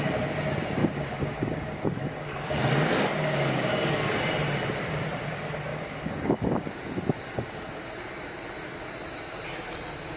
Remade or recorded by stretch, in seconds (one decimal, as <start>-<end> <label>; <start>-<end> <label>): 0.0-0.8 recorded; 0.8-2.6 remade; 2.6-3.2 recorded; 3.2-3.8 remade; 3.8-5.7 recorded; 5.7-7.9 remade; 7.9-10.2 recorded